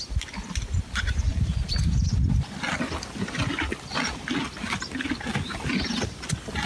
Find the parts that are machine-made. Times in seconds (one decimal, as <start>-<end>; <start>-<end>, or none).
1.3-5.3